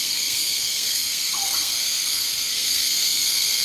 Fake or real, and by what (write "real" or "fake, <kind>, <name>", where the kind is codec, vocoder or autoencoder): fake, codec, SNAC